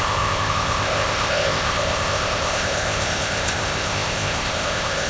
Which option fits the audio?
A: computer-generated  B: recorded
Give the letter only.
A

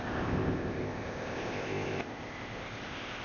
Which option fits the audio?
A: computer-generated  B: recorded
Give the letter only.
A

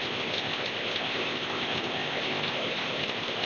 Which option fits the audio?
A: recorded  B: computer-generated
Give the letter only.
B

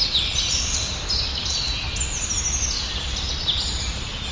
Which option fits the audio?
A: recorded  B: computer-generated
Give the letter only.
A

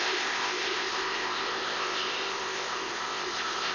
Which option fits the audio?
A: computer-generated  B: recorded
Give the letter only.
A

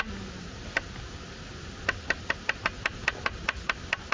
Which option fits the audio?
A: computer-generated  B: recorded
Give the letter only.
B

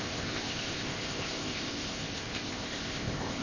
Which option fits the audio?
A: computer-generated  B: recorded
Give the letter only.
A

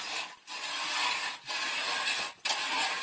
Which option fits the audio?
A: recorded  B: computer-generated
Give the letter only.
A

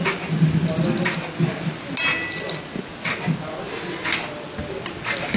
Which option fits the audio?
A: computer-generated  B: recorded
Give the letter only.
B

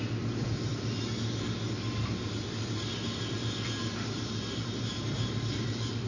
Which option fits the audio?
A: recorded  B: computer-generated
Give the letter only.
A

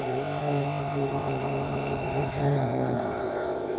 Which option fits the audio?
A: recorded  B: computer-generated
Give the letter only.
B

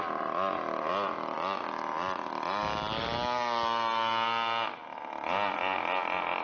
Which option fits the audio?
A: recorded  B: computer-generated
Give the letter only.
A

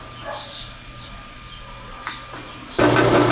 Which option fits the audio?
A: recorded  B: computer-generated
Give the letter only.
A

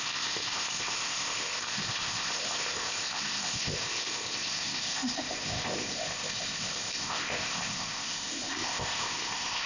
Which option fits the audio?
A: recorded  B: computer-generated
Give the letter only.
B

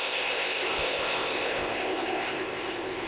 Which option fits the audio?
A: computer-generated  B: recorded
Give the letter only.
A